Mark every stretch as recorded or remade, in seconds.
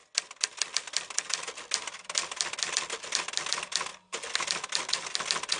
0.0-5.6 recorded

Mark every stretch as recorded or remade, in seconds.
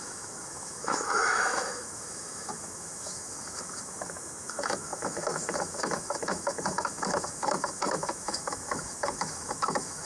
0.0-10.1 remade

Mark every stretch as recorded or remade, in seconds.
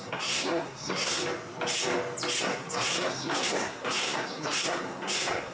0.0-1.2 remade; 1.2-2.4 recorded; 2.4-5.5 remade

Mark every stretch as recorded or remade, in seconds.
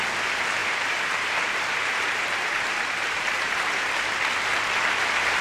0.0-0.6 recorded; 0.6-3.8 remade; 3.8-5.4 recorded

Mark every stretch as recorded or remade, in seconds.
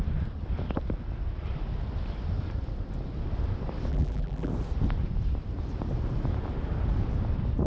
0.0-3.9 recorded; 3.9-4.5 remade; 4.5-7.7 recorded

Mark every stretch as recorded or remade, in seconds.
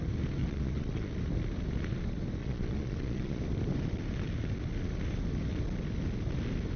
0.0-0.4 recorded; 0.4-1.1 remade; 1.1-2.4 recorded; 2.4-3.4 remade; 3.4-6.8 recorded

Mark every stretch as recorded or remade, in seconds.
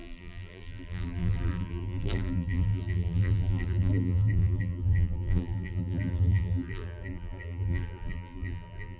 0.0-9.0 remade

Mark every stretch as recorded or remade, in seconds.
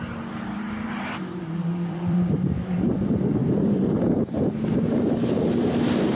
0.0-2.9 remade; 2.9-3.4 recorded; 3.4-5.7 remade; 5.7-6.2 recorded